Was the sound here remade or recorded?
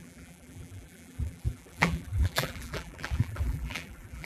remade